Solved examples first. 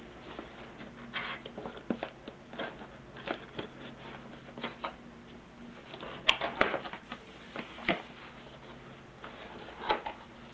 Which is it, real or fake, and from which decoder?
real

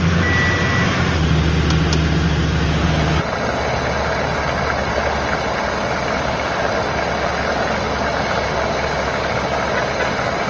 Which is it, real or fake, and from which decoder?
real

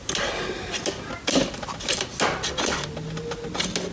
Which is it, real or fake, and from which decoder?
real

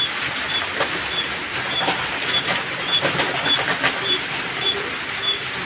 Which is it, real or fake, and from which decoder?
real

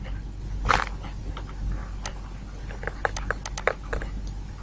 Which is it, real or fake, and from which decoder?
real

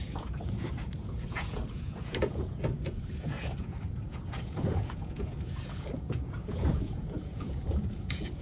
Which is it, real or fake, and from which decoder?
fake, vocoder, Vocos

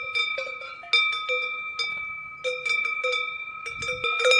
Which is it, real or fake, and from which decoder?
real